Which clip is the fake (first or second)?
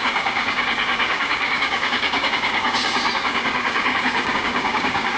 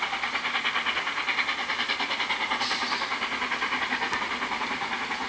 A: first